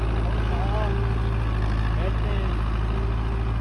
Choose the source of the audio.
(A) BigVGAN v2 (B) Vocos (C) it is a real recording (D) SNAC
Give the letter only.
C